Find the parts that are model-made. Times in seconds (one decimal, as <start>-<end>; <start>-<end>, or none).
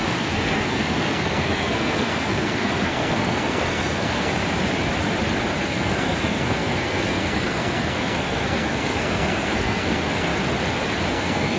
0.0-4.4; 5.6-10.3; 11.1-11.6